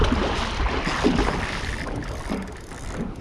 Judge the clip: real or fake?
real